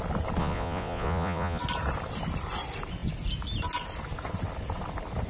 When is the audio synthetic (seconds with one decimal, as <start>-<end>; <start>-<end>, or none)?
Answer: 0.4-1.6